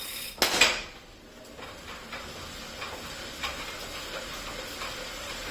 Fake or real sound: real